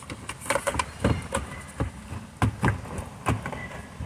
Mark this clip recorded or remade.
recorded